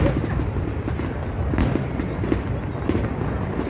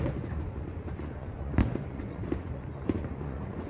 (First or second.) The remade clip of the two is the second